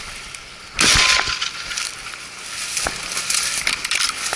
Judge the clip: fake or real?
real